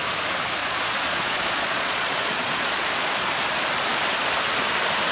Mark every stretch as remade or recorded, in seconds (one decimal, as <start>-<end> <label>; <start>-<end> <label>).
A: 0.0-0.6 recorded; 0.6-2.8 remade; 2.8-5.1 recorded